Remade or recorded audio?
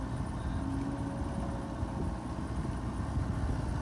recorded